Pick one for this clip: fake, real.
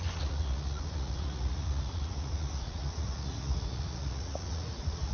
fake